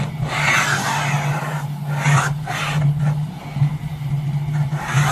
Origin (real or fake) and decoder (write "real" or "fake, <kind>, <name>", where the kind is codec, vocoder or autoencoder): real